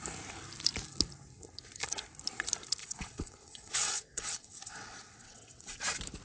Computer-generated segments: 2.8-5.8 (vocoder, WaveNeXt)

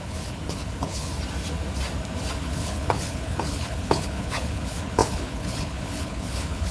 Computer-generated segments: 0.0-1.1 (codec, HILCodec); 2.4-6.7

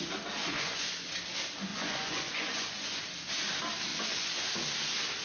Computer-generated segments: 0.4-1.1 (vocoder, Vocos); 1.7-3.0; 3.9-4.5

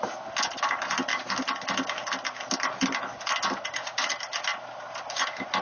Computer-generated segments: none

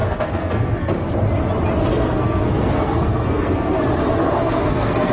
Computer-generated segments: 0.0-0.9 (codec, SNAC); 1.9-3.8; 4.2-5.1

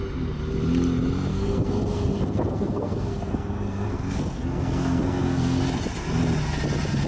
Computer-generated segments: 1.3-5.6 (codec, SNAC)

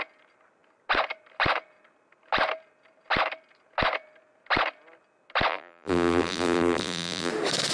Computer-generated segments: 5.5-7.3 (vocoder, BigVGAN v2)